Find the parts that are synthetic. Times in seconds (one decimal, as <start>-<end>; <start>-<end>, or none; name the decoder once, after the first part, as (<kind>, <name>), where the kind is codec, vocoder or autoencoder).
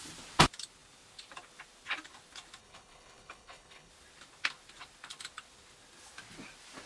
2.6-3.9 (codec, HILCodec)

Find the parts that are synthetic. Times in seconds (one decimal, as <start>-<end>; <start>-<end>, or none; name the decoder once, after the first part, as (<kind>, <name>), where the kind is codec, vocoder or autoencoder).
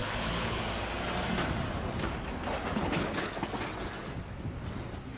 0.0-0.6 (codec, HILCodec); 2.7-3.5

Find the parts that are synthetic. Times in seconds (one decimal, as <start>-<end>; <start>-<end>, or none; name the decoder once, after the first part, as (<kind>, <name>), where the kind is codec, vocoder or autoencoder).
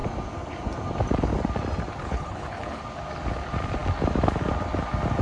2.0-2.8 (codec, HILCodec)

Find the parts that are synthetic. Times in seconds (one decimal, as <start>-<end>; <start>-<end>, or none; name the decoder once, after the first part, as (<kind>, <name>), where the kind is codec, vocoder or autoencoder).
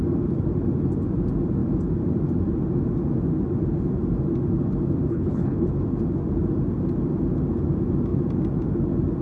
5.1-5.7 (codec, HILCodec)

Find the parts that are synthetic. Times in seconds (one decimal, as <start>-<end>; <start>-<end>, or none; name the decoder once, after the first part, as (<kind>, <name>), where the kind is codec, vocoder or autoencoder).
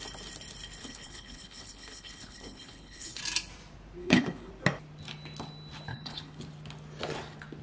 0.8-3.2 (codec, HILCodec); 4.0-4.5; 5.9-6.4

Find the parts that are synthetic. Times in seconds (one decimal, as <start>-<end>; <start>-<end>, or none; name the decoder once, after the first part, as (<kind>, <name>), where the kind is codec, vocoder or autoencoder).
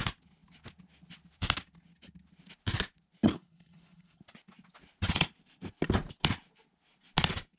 3.3-4.2 (codec, HILCodec)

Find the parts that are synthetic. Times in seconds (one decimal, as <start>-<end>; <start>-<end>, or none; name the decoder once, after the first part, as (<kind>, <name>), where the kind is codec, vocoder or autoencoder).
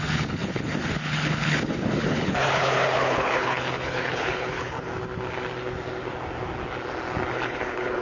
0.0-4.9 (codec, HILCodec); 7.3-8.0